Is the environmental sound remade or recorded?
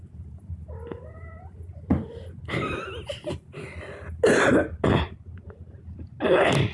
recorded